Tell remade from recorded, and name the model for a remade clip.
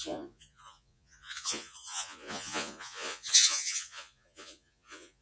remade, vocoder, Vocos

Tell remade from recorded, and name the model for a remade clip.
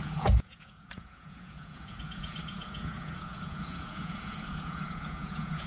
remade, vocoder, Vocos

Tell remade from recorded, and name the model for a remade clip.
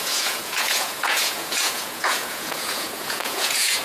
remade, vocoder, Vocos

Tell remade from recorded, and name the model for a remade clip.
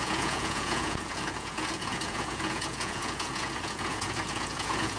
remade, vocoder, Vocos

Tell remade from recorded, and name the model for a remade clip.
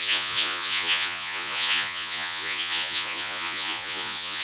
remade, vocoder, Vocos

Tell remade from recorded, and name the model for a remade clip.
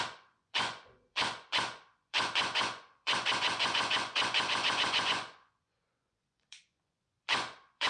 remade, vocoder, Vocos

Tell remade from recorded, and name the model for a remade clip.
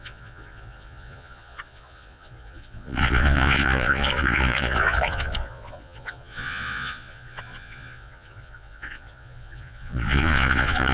remade, vocoder, Vocos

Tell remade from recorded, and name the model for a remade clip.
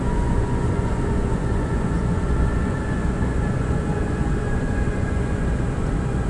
remade, vocoder, Vocos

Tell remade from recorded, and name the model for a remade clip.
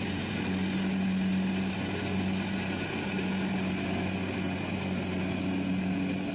recorded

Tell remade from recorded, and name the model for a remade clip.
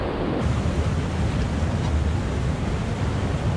recorded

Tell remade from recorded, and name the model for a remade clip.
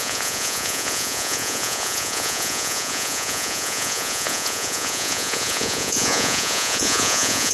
remade, vocoder, Vocos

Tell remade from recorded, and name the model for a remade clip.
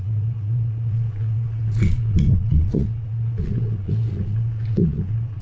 remade, vocoder, Vocos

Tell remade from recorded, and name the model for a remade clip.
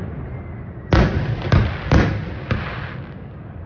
recorded